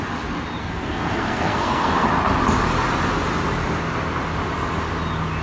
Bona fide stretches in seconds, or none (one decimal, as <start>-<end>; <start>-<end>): 0.0-0.6; 2.1-5.4